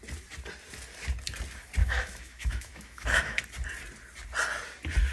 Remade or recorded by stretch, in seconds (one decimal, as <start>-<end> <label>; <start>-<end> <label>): 0.0-1.8 recorded; 1.8-3.4 remade; 3.4-5.1 recorded